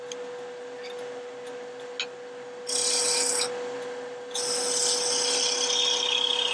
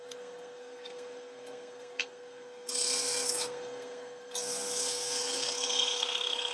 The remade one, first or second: second